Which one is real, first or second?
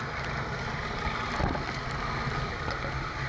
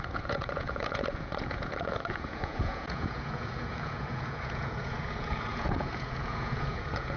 first